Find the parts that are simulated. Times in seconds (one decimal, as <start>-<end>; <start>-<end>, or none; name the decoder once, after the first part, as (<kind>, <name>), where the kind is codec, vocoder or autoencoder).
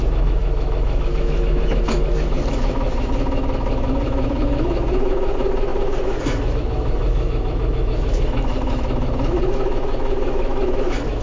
0.0-11.2 (autoencoder, DAC-VAE)